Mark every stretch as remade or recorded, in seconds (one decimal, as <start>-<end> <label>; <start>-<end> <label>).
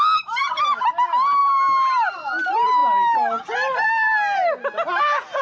0.0-5.4 recorded